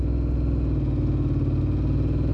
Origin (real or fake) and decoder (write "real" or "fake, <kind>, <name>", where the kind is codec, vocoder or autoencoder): real